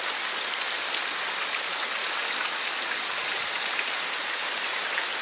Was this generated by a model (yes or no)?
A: no